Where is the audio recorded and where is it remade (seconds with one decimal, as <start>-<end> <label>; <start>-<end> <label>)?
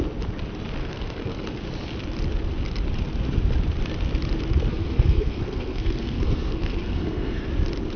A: 0.0-0.8 recorded; 0.8-1.5 remade; 1.5-4.7 recorded; 4.7-7.5 remade; 7.5-8.0 recorded